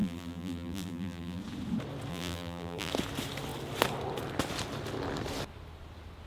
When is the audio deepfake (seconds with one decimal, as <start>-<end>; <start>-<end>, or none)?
0.0-1.4; 2.1-2.9